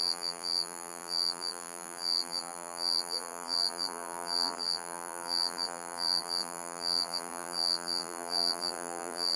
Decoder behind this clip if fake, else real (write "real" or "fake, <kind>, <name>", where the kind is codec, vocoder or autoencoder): fake, vocoder, BigVGAN v2